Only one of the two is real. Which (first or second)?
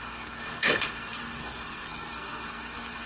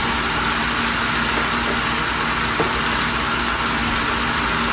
second